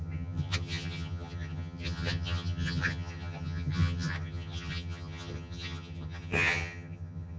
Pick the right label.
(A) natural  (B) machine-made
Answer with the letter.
B